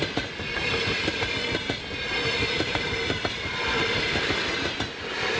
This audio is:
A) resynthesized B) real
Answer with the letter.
A